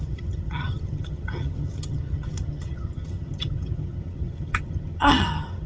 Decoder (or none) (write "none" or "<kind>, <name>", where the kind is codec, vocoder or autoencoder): vocoder, HiFi-GAN